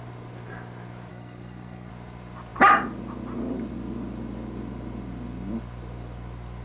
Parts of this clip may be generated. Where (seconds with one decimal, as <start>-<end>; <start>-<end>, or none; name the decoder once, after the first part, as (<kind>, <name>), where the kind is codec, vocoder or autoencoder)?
1.1-1.9 (codec, SNAC)